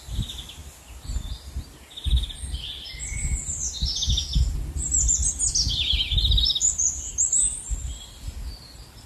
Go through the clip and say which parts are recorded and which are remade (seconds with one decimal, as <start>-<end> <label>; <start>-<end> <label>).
0.0-9.1 recorded